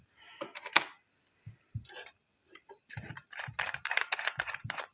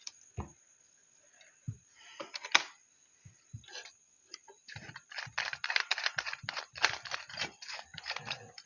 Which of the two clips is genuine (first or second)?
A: first